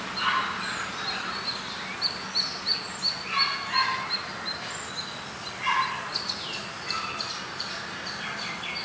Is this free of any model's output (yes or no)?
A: yes